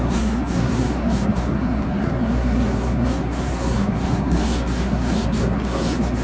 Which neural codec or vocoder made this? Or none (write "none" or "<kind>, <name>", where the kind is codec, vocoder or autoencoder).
codec, SNAC